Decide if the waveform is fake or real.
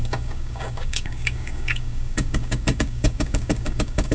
fake